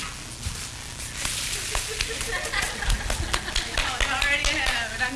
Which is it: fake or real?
real